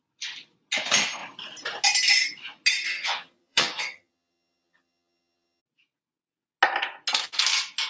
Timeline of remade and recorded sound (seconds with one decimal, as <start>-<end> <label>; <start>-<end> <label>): 0.0-2.9 recorded; 2.9-5.6 remade; 5.6-7.9 recorded